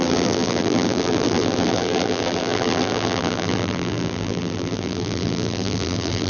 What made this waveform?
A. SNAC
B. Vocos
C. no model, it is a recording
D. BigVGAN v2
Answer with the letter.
D